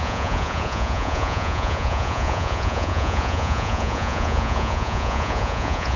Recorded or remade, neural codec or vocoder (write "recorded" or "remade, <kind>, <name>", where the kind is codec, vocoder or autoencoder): remade, vocoder, Vocos